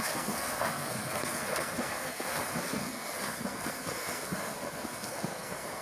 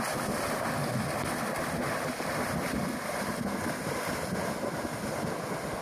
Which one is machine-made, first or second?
first